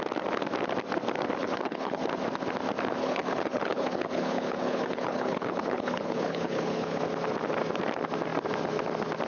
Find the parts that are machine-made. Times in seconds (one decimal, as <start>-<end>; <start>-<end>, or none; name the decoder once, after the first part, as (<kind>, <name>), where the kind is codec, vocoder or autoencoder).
1.4-2.0 (codec, HILCodec); 3.0-7.0